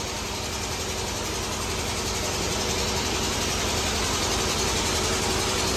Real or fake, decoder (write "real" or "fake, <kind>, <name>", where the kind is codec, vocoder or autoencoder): real